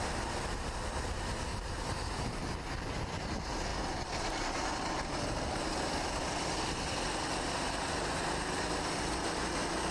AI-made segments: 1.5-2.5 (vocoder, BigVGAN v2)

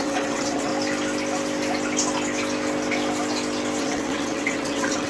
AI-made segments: 0.0-0.7 (vocoder, WaveNeXt); 3.8-5.1

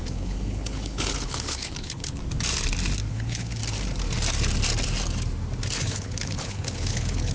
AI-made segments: 0.0-2.2 (codec, HILCodec); 3.1-3.6; 5.8-7.3